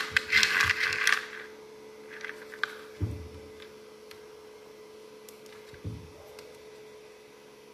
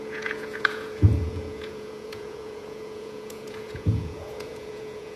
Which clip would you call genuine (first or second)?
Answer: first